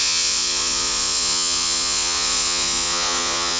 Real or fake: fake